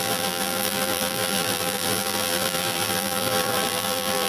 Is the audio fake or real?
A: fake